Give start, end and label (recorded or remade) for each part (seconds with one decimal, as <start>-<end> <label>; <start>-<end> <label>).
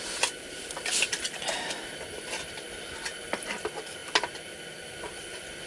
0.0-5.7 recorded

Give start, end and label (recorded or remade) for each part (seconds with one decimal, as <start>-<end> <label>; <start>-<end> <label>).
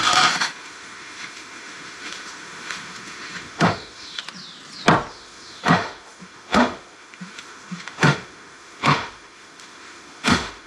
0.0-4.2 remade; 4.2-5.1 recorded; 5.1-10.7 remade